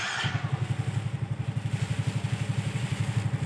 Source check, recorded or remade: recorded